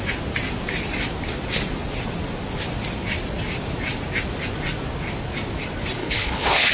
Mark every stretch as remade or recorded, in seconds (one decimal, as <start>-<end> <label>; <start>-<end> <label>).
0.0-6.0 recorded; 6.0-6.7 remade